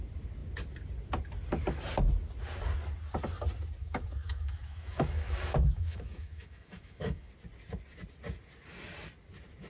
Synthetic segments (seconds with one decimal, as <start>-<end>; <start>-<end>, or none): 3.8-7.3